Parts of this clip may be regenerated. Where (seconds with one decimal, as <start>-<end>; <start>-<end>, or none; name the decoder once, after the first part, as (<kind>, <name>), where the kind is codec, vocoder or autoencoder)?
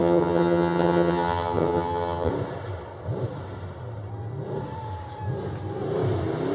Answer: 0.0-2.3 (vocoder, HiFi-GAN)